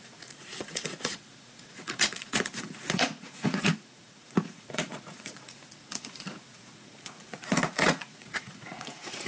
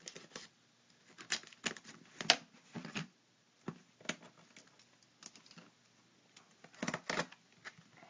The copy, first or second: first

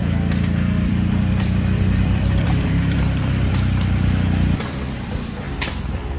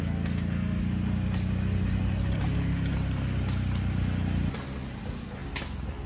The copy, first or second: first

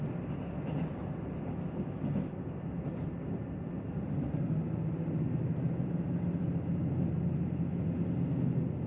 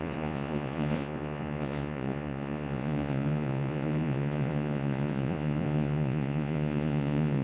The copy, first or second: second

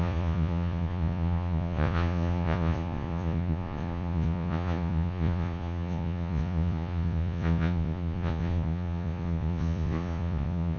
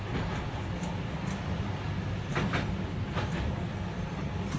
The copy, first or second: first